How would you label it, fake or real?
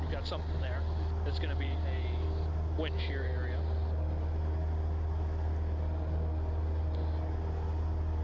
real